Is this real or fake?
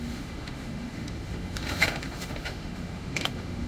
fake